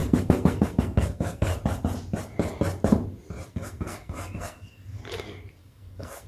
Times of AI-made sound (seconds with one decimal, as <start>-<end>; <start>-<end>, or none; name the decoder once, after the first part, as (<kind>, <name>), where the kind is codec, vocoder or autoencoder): 0.0-1.5 (codec, SNAC); 3.5-5.0; 5.6-6.3